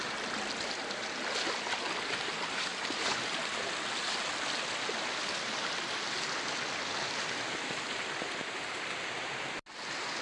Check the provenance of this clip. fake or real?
real